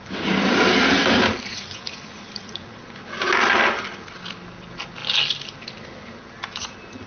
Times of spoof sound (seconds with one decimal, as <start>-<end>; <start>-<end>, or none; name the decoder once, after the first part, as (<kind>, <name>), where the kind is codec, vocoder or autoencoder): 1.5-2.8 (vocoder, Vocos)